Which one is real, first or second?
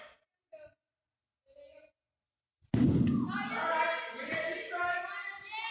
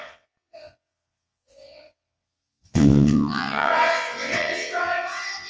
first